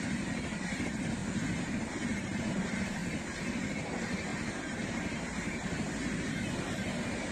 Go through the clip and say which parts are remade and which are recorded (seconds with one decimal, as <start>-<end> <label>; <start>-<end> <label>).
0.0-1.2 remade; 1.2-1.9 recorded; 1.9-4.3 remade; 4.3-4.9 recorded; 4.9-7.3 remade